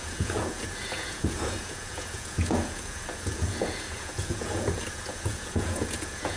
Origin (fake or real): fake